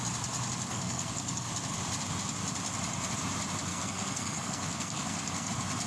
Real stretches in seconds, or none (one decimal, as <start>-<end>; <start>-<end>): 0.0-0.7; 1.5-3.7; 5.5-5.9